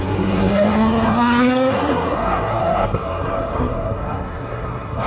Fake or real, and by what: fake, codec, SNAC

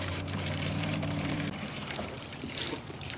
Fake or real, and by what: fake, vocoder, BigVGAN v2